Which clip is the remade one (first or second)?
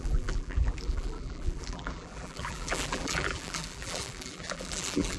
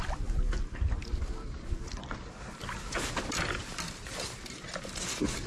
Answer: first